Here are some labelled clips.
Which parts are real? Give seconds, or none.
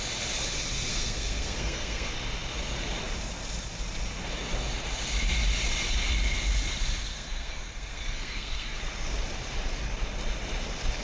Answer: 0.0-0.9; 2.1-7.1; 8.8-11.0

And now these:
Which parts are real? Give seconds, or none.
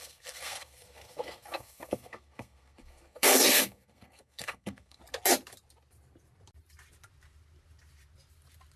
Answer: 5.0-8.8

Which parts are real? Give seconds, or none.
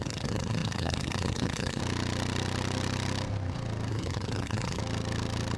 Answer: 1.8-3.9; 4.8-5.6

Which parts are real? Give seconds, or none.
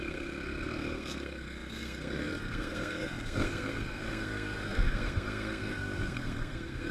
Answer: none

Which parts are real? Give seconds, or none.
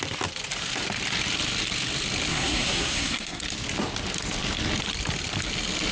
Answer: 0.0-2.3; 3.4-5.9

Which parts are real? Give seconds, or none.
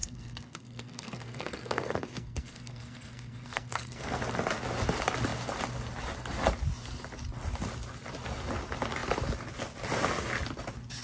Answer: 4.2-11.0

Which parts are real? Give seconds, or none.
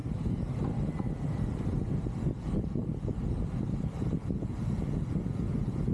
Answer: 0.0-5.9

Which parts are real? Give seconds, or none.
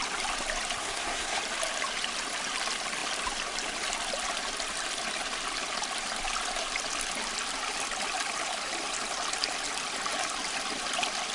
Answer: 0.0-0.8; 1.4-11.3